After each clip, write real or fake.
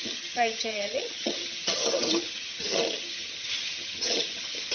fake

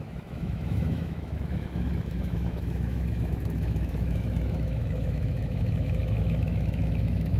fake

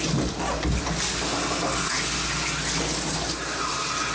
real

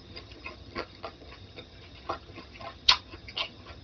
fake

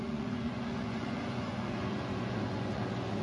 fake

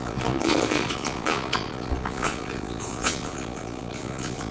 fake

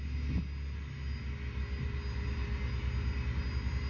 real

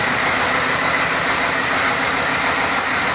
real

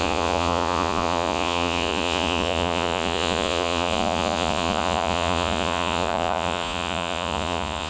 fake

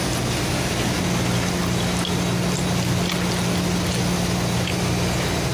real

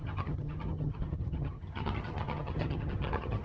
fake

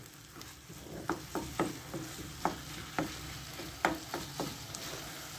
real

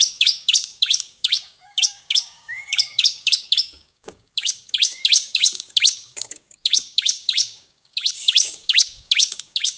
fake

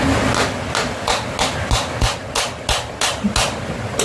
real